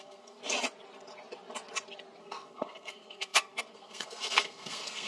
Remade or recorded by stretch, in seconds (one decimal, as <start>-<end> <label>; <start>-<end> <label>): 0.0-0.4 remade; 0.4-2.2 recorded; 2.2-5.1 remade